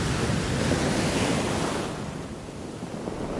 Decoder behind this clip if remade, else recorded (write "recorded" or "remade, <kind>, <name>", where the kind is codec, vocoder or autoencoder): recorded